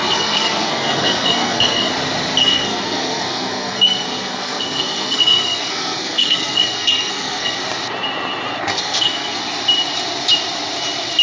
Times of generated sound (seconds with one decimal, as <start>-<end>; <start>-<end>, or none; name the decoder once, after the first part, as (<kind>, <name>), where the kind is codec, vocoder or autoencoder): 0.0-1.9 (codec, SNAC); 2.4-7.6; 8.7-9.4